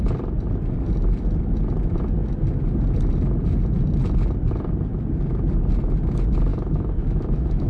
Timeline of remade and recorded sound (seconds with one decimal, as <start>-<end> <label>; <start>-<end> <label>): 0.0-6.5 recorded; 6.5-7.7 remade